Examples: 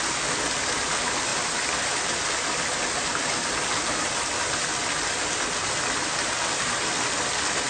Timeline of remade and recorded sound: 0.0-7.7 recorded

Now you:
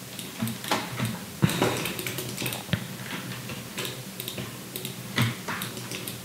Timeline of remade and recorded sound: 0.0-6.2 recorded

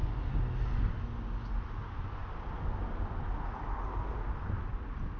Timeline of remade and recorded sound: 0.0-5.2 recorded

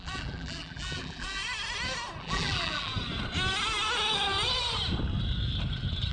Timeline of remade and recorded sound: 0.0-1.4 remade; 1.4-2.2 recorded; 2.2-2.9 remade; 2.9-6.1 recorded